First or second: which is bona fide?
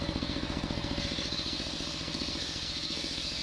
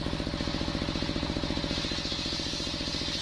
second